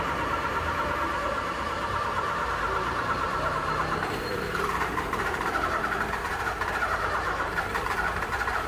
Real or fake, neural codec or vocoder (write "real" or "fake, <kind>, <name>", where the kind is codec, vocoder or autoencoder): fake, vocoder, BigVGAN v2